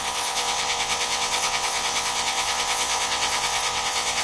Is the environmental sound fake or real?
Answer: fake